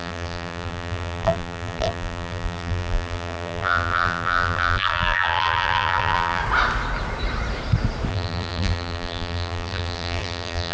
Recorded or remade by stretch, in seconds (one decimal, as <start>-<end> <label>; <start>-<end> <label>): 0.0-6.4 remade; 6.4-8.1 recorded; 8.1-10.7 remade